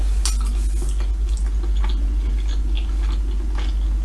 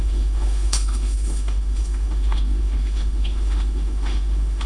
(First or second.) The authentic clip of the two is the first